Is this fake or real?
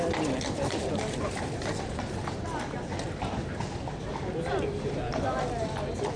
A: real